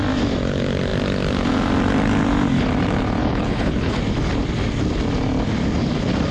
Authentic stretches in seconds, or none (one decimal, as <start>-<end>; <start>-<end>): 0.0-3.2; 4.0-6.3